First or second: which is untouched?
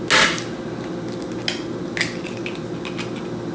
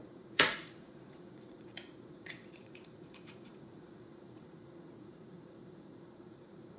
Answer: first